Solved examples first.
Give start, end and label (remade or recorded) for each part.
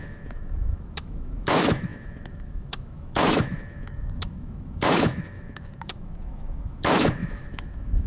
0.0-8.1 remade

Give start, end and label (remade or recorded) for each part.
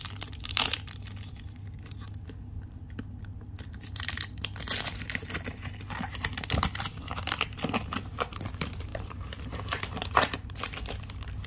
0.0-8.9 recorded; 8.9-10.6 remade; 10.6-11.5 recorded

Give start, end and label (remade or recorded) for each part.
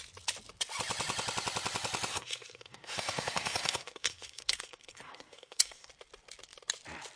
0.0-2.1 recorded; 2.1-5.9 remade; 5.9-7.2 recorded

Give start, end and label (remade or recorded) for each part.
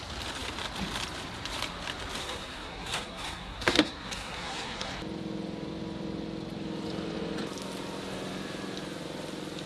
0.0-2.2 recorded; 2.2-4.9 remade; 4.9-9.7 recorded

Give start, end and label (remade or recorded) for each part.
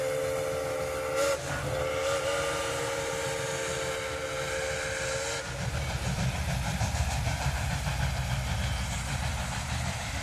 0.0-2.0 recorded; 2.0-3.3 remade; 3.3-6.7 recorded; 6.7-7.9 remade; 7.9-10.2 recorded